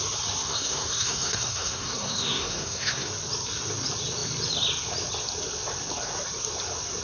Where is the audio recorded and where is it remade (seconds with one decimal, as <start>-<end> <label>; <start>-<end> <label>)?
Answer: 0.0-0.4 recorded; 0.4-3.1 remade; 3.1-7.0 recorded